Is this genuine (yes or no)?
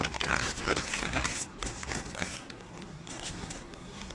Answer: no